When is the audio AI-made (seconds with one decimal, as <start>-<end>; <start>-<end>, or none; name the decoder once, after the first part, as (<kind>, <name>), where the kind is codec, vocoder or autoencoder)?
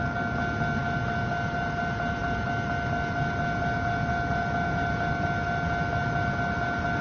none